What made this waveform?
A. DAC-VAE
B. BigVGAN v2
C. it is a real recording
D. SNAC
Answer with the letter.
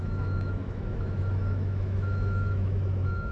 A